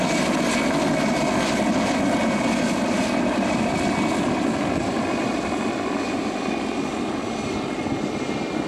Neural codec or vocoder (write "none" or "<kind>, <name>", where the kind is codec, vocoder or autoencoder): none